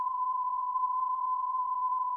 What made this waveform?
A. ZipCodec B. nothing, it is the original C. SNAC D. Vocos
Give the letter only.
D